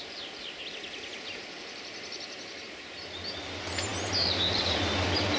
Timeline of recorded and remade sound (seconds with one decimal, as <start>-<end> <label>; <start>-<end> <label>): 0.0-5.4 recorded